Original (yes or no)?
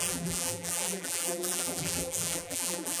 no